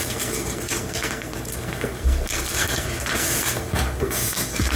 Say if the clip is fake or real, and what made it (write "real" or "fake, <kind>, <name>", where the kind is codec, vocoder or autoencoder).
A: fake, codec, SNAC